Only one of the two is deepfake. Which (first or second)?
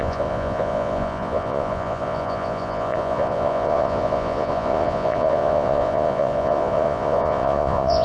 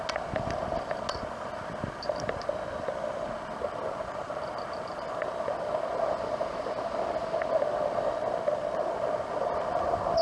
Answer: first